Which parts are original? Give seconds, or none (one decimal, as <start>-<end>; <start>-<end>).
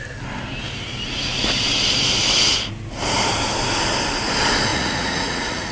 0.0-4.7